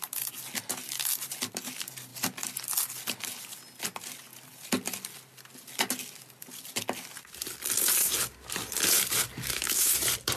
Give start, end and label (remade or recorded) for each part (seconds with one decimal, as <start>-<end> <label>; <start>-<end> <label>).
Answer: 0.0-9.5 recorded; 9.5-10.0 remade; 10.0-10.4 recorded